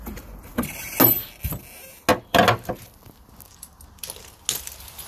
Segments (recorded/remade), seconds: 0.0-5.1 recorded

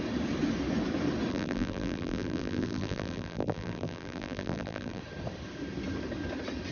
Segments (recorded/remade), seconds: 0.0-1.3 recorded; 1.3-5.0 remade; 5.0-6.7 recorded